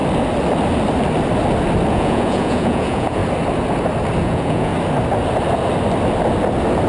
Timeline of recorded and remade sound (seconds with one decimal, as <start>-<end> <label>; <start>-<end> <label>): 0.0-1.9 recorded; 1.9-3.2 remade; 3.2-4.2 recorded; 4.2-4.7 remade; 4.7-6.9 recorded